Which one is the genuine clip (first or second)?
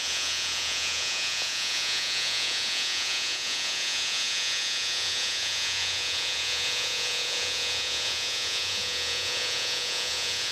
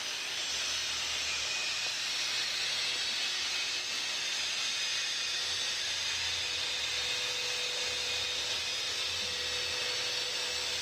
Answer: second